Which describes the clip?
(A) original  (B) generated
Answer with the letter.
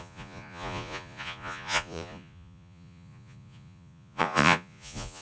B